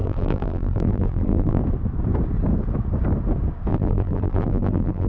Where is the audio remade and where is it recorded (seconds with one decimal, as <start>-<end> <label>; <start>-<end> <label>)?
0.0-1.6 remade; 1.6-3.7 recorded; 3.7-5.1 remade